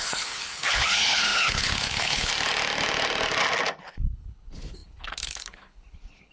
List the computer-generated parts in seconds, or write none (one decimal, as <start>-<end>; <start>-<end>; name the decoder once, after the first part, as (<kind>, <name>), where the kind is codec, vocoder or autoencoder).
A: 0.0-2.3 (codec, HILCodec); 3.8-6.3